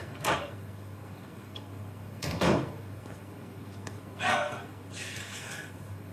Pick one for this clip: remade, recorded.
remade